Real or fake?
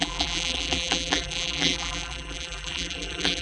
fake